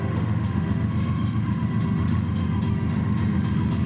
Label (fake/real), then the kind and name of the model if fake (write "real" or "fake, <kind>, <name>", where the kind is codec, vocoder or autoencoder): fake, autoencoder, DAC-VAE